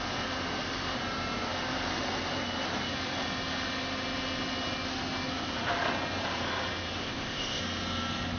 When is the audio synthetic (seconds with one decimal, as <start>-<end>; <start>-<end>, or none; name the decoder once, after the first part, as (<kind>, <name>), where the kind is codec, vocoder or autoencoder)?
7.0-7.6 (codec, ZipCodec)